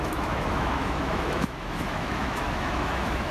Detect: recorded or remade remade